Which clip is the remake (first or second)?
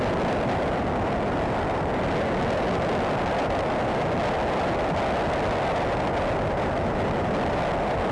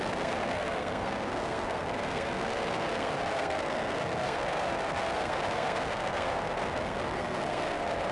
second